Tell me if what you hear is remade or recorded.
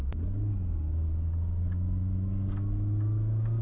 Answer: recorded